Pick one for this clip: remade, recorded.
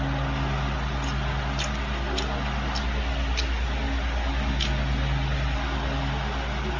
recorded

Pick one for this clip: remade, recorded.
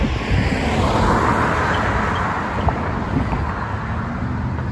recorded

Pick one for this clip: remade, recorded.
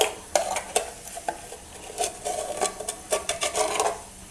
recorded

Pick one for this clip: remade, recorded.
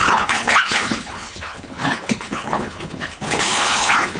remade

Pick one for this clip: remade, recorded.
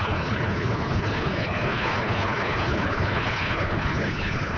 remade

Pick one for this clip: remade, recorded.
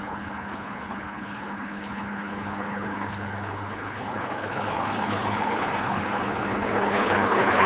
remade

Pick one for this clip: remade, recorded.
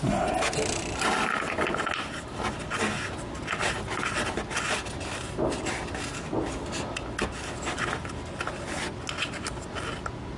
recorded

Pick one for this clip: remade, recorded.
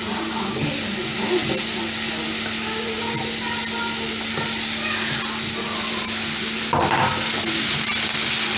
recorded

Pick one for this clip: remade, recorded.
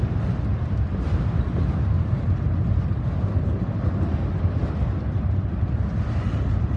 recorded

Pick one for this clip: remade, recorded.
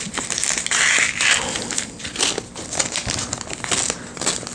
recorded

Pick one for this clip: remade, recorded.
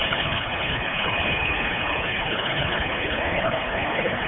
remade